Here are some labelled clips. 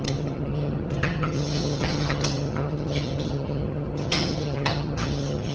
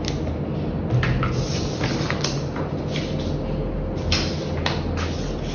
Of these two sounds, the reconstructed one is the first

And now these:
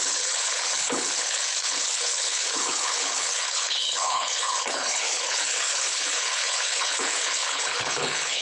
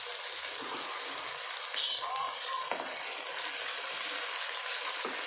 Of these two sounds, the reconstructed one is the first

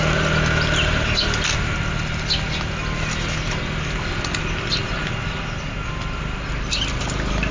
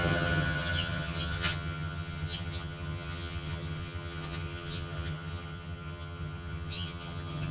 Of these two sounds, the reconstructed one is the second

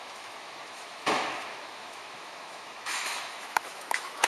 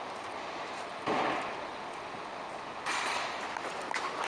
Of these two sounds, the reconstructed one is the first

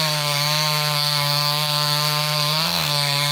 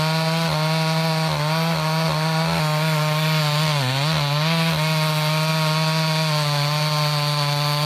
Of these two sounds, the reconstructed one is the first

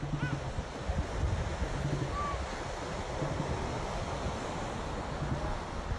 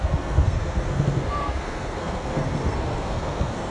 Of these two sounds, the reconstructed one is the second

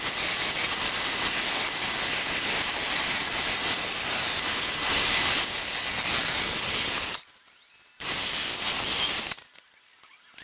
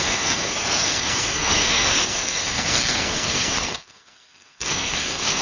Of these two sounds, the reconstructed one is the second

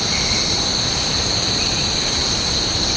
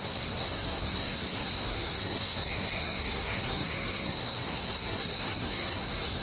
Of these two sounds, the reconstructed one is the second